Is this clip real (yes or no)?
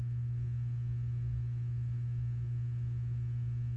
yes